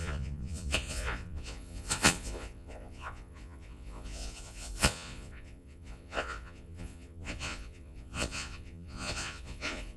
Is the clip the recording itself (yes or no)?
no